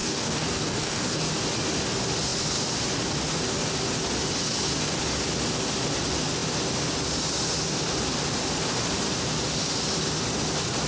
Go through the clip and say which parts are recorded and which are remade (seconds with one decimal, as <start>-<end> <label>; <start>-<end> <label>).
0.0-1.3 remade; 1.3-10.9 recorded